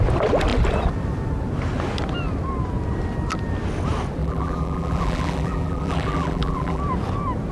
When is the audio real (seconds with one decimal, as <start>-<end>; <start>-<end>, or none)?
0.0-4.2; 6.8-7.5